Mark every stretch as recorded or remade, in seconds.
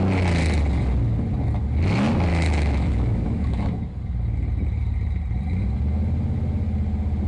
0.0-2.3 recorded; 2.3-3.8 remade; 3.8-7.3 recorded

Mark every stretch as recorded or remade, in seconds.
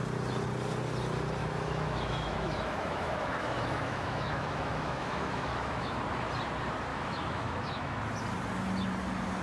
0.0-1.4 recorded; 1.4-6.0 remade; 6.0-6.9 recorded; 6.9-8.0 remade; 8.0-9.4 recorded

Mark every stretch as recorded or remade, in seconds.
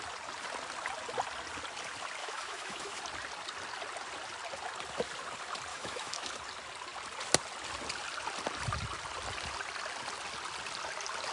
0.0-2.2 recorded; 2.2-3.0 remade; 3.0-5.7 recorded; 5.7-6.3 remade; 6.3-11.3 recorded